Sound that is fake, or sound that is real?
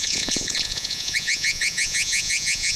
fake